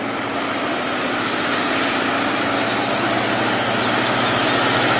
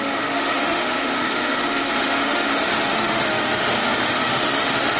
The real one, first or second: first